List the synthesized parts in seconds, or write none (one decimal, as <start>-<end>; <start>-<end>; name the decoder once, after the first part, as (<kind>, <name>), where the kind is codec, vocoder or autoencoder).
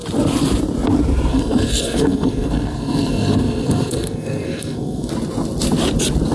1.3-5.1 (codec, SNAC)